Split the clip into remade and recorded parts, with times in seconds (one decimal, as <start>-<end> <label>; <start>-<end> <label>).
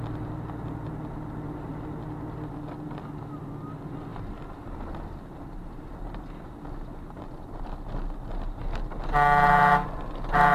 0.0-10.5 recorded